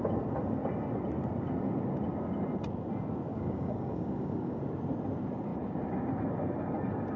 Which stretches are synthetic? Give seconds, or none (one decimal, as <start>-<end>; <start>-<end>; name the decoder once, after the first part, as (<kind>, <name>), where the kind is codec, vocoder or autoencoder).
3.3-4.6 (codec, DAC)